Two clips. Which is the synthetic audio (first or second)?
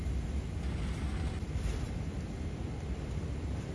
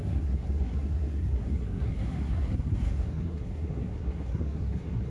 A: second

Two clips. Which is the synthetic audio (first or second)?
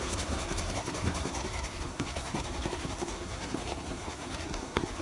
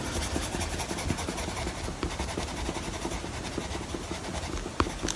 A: first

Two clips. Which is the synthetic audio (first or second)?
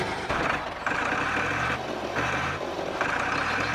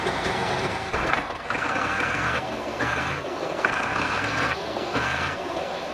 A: second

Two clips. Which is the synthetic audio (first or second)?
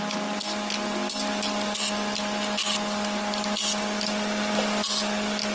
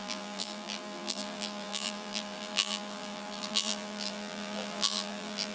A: second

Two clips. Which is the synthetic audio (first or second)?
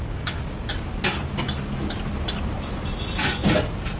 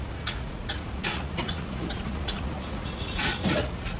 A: second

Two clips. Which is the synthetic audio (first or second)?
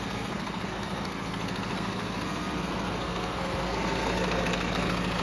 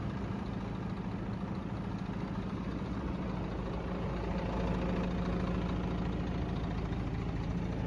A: first